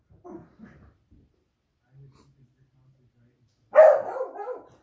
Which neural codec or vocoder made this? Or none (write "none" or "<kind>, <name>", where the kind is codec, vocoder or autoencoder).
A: none